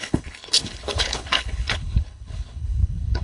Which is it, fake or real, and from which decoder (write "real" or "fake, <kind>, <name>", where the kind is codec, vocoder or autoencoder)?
fake, codec, HILCodec